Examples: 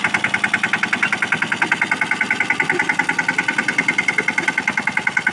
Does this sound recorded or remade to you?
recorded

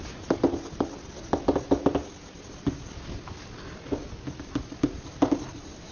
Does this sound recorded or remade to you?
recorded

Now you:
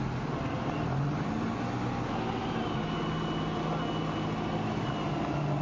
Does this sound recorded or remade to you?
recorded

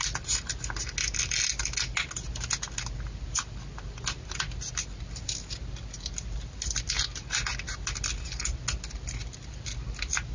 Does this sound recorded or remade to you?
recorded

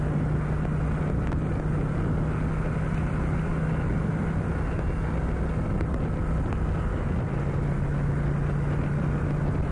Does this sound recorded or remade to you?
recorded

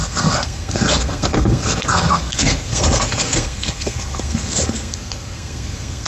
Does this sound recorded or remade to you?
remade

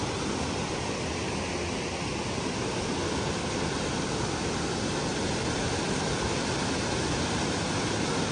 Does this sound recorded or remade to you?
recorded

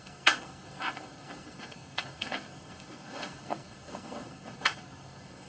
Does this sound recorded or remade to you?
remade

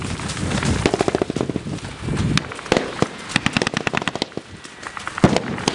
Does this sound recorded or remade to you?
recorded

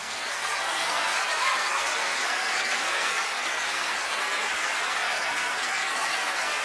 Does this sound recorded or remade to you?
remade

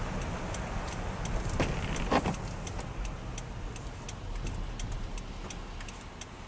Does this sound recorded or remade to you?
recorded